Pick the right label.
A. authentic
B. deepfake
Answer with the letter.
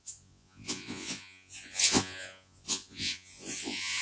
B